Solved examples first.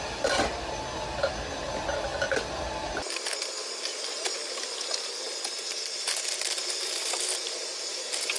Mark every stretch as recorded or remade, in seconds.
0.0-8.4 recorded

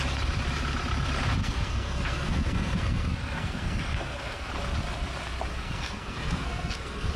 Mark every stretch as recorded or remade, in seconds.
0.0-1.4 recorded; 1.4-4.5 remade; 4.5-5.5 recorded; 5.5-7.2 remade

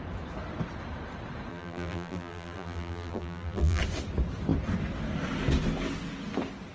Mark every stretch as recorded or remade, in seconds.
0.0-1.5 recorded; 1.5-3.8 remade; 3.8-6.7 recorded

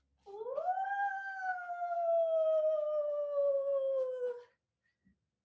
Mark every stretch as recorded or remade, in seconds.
0.0-5.4 recorded

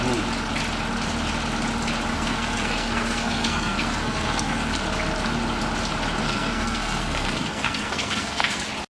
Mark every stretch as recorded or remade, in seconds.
0.0-2.1 recorded; 2.1-4.7 remade; 4.7-6.2 recorded; 6.2-8.6 remade; 8.6-9.0 recorded